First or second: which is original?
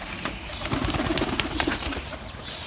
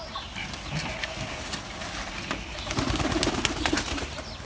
second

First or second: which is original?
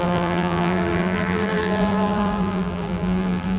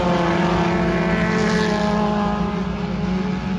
second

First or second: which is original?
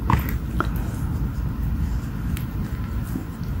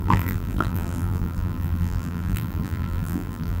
first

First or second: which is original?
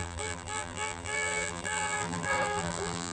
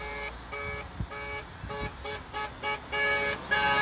second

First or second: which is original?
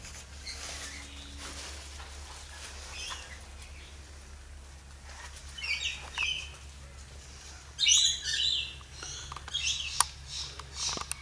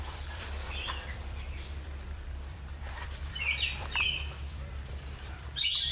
first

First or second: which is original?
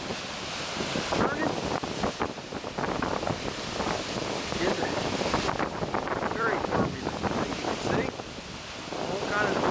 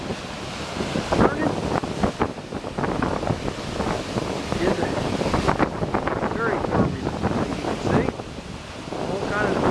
second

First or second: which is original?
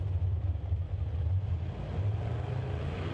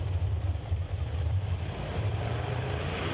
first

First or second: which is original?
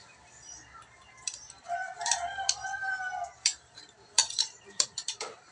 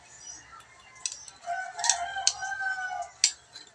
second